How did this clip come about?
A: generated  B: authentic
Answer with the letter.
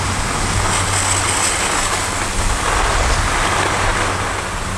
B